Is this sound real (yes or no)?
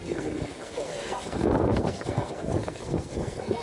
no